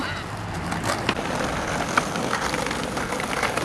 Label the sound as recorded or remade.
recorded